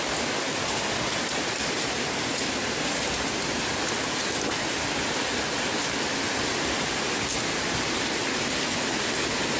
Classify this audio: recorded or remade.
recorded